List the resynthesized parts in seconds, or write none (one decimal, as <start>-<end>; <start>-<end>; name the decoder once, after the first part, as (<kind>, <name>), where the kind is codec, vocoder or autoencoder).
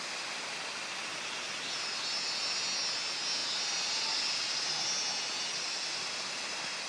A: none